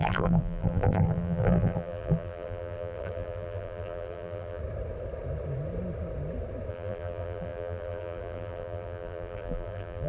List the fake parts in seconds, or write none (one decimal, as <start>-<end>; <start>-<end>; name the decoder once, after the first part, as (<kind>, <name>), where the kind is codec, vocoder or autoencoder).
0.0-4.6 (vocoder, BigVGAN v2); 6.7-10.1